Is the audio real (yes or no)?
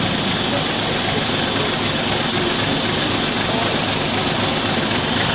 yes